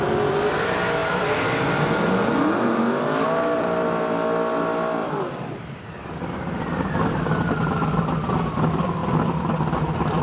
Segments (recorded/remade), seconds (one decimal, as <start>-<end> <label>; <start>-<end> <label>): 0.0-1.0 recorded; 1.0-1.5 remade; 1.5-5.0 recorded; 5.0-6.9 remade; 6.9-10.2 recorded